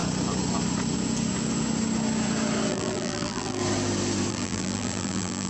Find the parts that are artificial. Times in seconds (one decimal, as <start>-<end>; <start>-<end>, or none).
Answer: 2.7-3.6; 4.3-5.5